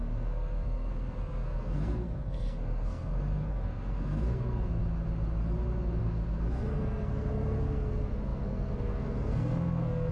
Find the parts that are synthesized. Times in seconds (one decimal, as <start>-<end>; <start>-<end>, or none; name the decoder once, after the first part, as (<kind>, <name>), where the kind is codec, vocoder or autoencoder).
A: 0.0-4.8 (codec, SNAC); 6.0-10.1